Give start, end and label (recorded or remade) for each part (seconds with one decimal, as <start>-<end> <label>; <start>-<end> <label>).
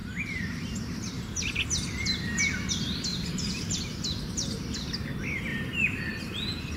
0.0-2.7 remade; 2.7-3.1 recorded; 3.1-3.8 remade; 3.8-5.5 recorded; 5.5-6.2 remade; 6.2-6.8 recorded